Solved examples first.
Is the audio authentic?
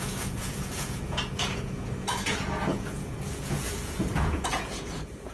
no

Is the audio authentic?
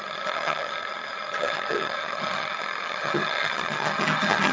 no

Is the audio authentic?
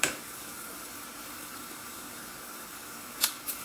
no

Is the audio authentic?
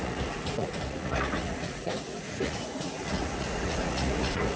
no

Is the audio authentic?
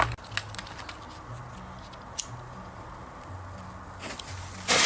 yes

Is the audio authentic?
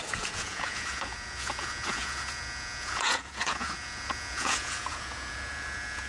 no